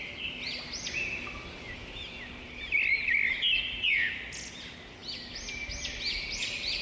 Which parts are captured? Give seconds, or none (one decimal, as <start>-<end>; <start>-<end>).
0.0-6.8